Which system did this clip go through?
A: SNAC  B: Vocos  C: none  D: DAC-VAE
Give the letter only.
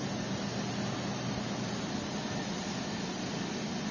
C